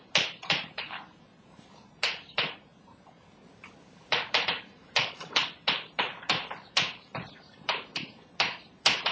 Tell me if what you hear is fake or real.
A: fake